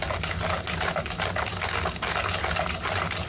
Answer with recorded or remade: recorded